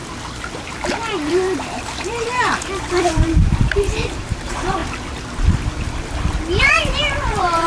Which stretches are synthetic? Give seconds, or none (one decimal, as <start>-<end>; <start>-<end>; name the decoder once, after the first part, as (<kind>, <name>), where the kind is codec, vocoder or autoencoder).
0.6-4.8 (vocoder, BigVGAN v2); 6.6-7.7